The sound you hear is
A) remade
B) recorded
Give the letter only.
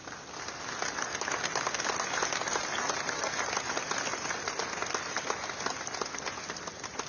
B